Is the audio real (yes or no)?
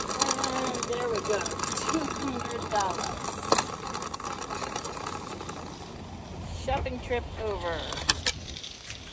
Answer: yes